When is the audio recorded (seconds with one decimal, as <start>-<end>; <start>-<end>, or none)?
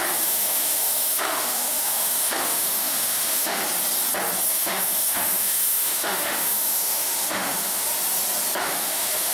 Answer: 3.6-4.5; 7.9-8.6